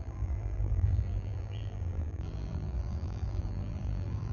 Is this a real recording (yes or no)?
no